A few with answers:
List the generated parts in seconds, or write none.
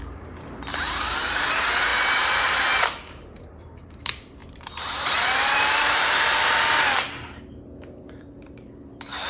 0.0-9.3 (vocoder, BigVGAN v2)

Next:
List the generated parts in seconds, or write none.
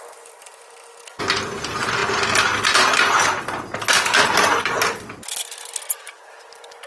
none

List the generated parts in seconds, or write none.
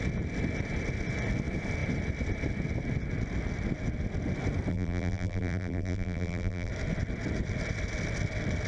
4.7-6.7 (vocoder, BigVGAN v2)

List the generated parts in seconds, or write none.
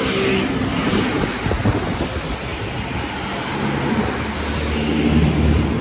2.5-3.5 (vocoder, BigVGAN v2)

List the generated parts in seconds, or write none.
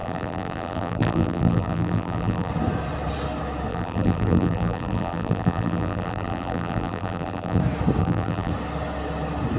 0.0-2.5 (vocoder, BigVGAN v2); 3.7-7.6; 8.0-8.5